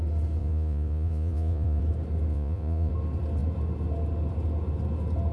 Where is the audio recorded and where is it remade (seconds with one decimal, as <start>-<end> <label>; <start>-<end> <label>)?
0.0-0.4 recorded; 0.4-1.8 remade; 1.8-2.3 recorded; 2.3-2.9 remade; 2.9-5.3 recorded

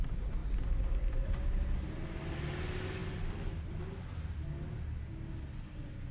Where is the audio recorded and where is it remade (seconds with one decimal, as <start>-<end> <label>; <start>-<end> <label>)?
0.0-3.0 recorded; 3.0-3.8 remade; 3.8-6.1 recorded

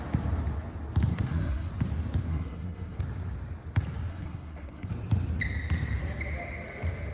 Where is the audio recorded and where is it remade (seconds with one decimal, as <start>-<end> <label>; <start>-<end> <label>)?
0.0-1.1 recorded; 1.1-1.7 remade; 1.7-2.3 recorded; 2.3-3.0 remade; 3.0-4.1 recorded; 4.1-4.9 remade; 4.9-7.1 recorded

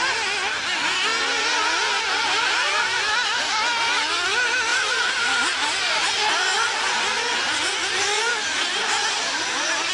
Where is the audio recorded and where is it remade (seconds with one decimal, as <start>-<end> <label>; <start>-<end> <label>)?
0.0-4.7 recorded; 4.7-6.1 remade; 6.1-9.9 recorded

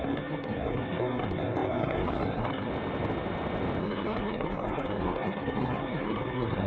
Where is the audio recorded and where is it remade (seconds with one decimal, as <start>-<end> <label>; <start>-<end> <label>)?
0.0-2.7 remade; 2.7-3.8 recorded; 3.8-6.7 remade